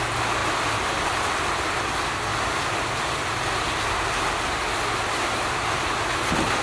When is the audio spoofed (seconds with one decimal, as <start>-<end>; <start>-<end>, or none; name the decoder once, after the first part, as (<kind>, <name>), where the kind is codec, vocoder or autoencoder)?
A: 0.4-1.2 (vocoder, BigVGAN v2); 2.3-3.2